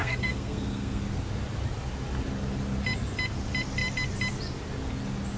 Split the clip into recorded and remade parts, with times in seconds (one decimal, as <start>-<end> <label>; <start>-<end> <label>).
0.0-1.0 remade; 1.0-5.4 recorded